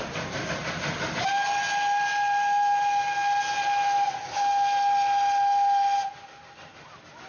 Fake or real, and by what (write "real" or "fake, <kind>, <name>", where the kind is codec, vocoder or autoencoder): real